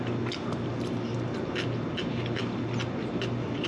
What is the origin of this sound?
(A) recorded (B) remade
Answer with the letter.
A